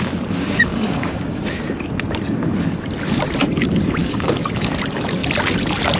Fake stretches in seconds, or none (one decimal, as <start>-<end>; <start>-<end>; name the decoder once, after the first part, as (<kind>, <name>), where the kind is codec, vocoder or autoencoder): 0.7-1.4 (codec, DAC); 4.0-4.7

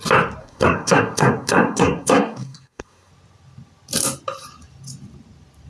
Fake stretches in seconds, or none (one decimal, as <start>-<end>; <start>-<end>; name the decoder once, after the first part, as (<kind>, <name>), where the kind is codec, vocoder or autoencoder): 0.4-3.1 (codec, SNAC)

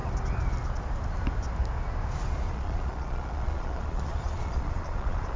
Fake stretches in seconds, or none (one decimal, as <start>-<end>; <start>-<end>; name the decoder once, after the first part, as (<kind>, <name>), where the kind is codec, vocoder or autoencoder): 2.5-5.4 (vocoder, Vocos)

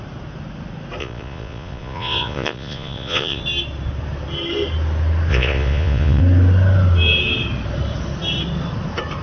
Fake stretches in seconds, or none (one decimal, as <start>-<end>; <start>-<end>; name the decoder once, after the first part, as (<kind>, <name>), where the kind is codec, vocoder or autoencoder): 1.0-3.4 (vocoder, Vocos); 5.3-6.2